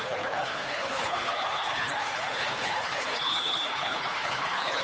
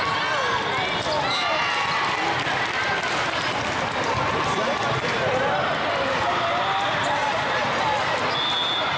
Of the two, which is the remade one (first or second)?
first